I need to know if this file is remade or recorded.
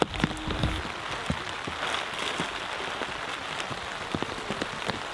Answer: recorded